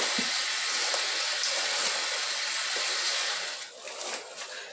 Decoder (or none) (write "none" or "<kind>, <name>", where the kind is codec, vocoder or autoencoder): none